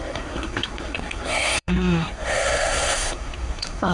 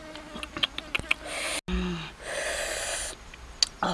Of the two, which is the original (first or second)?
second